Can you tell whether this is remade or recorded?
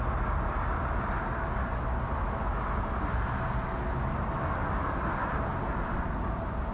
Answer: recorded